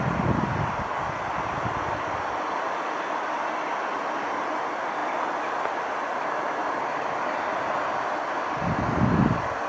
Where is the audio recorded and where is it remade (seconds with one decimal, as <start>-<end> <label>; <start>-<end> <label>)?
0.0-9.7 recorded